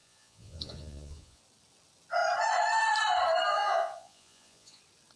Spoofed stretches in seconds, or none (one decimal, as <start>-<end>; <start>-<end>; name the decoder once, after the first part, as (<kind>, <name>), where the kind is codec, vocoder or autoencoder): 0.0-1.4 (vocoder, Vocos); 3.5-4.8